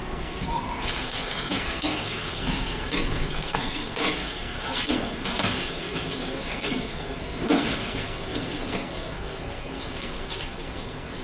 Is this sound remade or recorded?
remade